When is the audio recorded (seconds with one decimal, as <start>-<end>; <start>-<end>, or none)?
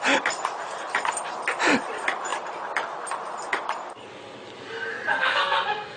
0.0-5.1